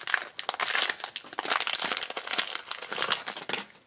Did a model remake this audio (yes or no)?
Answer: no